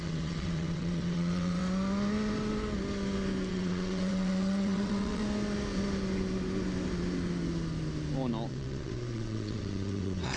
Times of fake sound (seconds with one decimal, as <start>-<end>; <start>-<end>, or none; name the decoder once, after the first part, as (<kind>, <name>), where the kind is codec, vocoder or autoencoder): 0.0-1.6 (vocoder, WaveNeXt); 3.5-5.2; 8.5-10.4